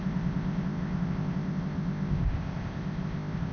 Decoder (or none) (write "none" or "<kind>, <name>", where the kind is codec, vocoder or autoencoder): codec, ZipCodec